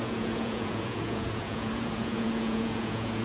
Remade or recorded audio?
remade